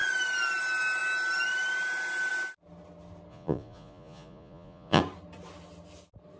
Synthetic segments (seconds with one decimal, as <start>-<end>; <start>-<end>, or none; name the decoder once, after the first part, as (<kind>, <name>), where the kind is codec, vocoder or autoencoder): 3.3-5.0 (vocoder, Vocos)